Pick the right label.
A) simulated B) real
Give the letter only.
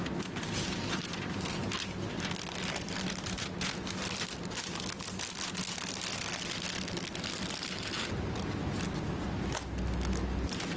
B